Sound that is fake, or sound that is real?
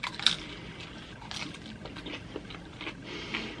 real